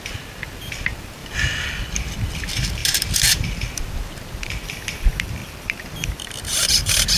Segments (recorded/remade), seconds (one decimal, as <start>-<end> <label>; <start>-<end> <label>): 0.0-1.2 remade; 1.2-1.8 recorded; 1.8-7.2 remade